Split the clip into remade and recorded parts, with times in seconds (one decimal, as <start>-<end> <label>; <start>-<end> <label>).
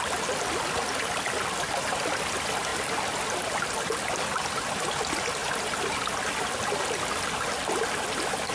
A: 0.0-8.5 recorded